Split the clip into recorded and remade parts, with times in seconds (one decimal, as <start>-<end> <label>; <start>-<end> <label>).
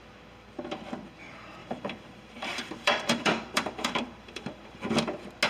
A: 0.0-1.6 recorded; 1.6-4.9 remade; 4.9-5.5 recorded